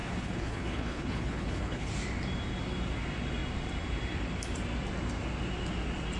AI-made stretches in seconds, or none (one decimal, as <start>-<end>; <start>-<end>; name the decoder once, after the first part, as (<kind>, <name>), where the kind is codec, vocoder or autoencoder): 0.0-1.9 (codec, HILCodec)